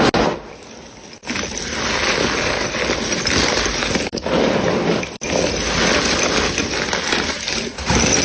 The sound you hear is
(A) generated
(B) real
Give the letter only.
B